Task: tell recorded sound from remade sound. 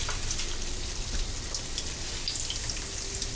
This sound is recorded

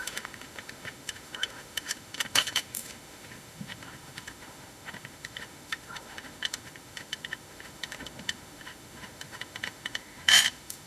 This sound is remade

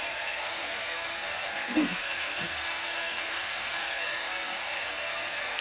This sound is remade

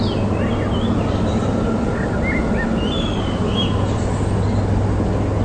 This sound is recorded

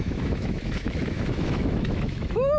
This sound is remade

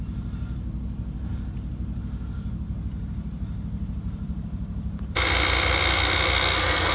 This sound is recorded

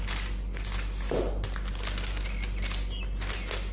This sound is recorded